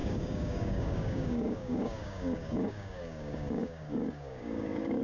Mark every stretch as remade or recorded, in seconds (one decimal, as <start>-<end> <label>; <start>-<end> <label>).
0.0-5.0 remade